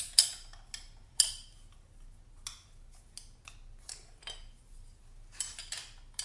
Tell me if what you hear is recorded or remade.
recorded